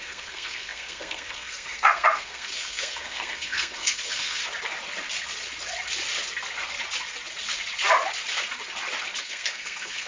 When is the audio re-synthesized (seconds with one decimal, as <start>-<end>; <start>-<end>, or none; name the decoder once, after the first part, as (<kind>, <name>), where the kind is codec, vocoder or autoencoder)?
0.0-4.4 (codec, SNAC); 9.2-10.1